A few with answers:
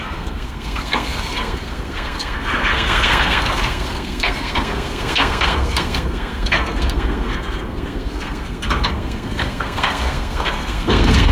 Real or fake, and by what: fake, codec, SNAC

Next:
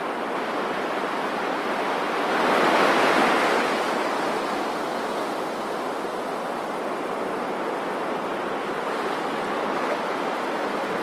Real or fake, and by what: real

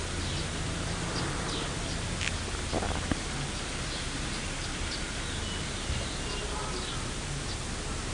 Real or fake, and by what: real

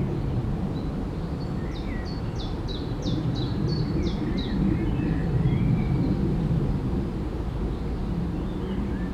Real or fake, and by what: real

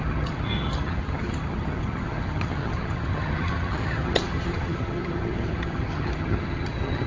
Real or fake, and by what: fake, vocoder, HiFi-GAN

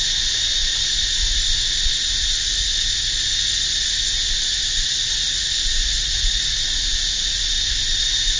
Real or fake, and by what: real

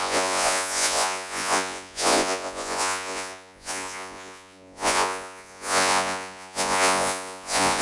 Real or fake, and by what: fake, vocoder, Vocos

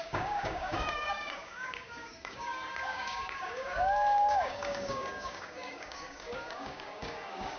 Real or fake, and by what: fake, codec, DAC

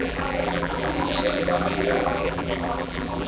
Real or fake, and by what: fake, vocoder, BigVGAN v2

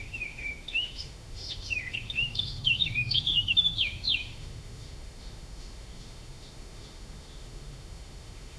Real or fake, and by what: fake, autoencoder, DAC-VAE